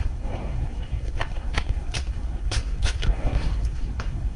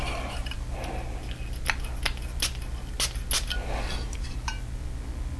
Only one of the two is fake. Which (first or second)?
first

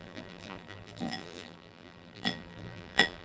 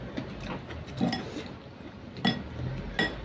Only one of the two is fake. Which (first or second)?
first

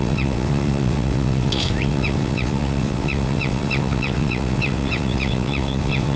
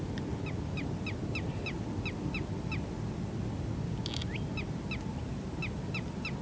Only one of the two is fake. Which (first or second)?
first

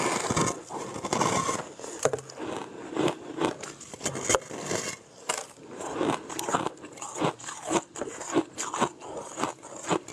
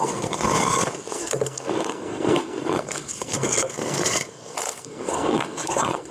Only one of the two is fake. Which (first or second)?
second